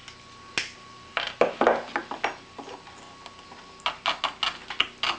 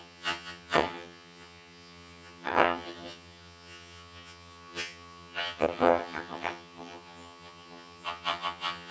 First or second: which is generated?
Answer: second